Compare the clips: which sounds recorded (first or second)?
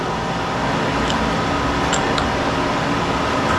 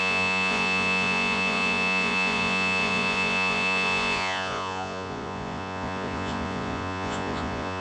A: first